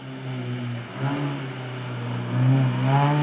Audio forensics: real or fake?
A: real